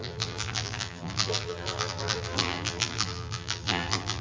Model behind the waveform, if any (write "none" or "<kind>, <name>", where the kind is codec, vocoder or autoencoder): vocoder, BigVGAN v2